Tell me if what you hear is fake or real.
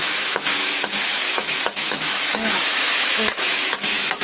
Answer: fake